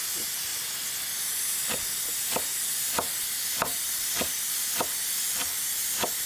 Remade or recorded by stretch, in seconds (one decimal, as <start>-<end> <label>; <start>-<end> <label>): 0.0-6.3 recorded